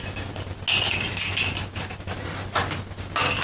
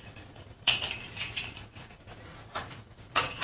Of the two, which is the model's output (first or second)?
second